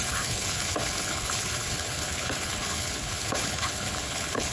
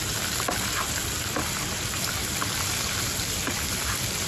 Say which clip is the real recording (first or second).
second